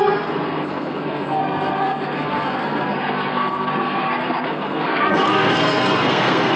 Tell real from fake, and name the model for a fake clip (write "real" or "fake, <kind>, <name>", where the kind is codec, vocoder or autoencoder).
fake, codec, SNAC